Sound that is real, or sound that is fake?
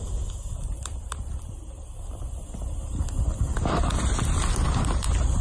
real